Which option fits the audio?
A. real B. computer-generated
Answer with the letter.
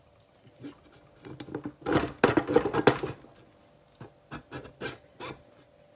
A